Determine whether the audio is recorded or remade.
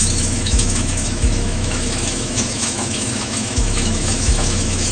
remade